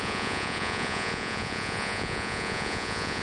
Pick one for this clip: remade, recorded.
remade